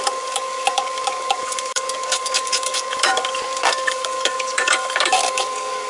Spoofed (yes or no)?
yes